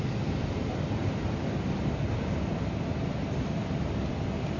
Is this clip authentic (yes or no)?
no